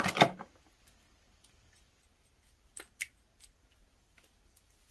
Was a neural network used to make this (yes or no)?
no